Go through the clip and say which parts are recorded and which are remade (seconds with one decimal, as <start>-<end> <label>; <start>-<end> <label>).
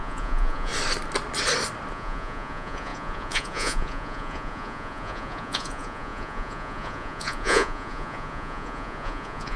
0.0-0.7 remade; 0.7-1.9 recorded; 1.9-9.6 remade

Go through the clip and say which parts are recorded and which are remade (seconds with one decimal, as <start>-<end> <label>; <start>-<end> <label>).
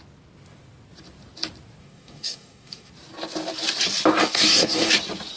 0.0-1.8 recorded; 1.8-2.9 remade; 2.9-4.2 recorded; 4.2-4.9 remade; 4.9-5.4 recorded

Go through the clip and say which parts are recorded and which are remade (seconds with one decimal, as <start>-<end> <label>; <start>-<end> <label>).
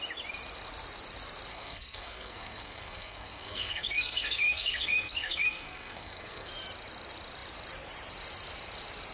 0.0-1.5 recorded; 1.5-6.5 remade; 6.5-9.1 recorded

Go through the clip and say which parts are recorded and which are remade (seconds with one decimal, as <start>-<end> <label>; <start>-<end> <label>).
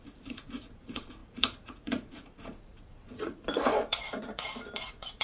0.0-5.2 remade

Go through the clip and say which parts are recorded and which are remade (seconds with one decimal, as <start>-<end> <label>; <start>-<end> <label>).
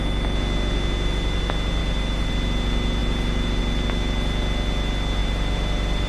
0.0-1.8 recorded; 1.8-2.3 remade; 2.3-3.0 recorded; 3.0-3.6 remade; 3.6-5.2 recorded; 5.2-6.1 remade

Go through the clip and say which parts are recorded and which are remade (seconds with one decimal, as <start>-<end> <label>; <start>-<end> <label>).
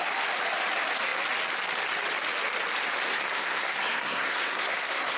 0.0-3.1 recorded; 3.1-5.2 remade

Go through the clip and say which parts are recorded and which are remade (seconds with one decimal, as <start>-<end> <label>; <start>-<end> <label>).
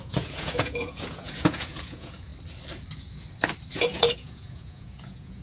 0.0-2.3 remade; 2.3-3.7 recorded; 3.7-5.4 remade